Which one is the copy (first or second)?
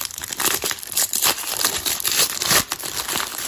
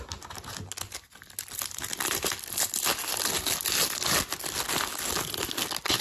first